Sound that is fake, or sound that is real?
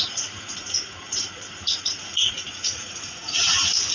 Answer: fake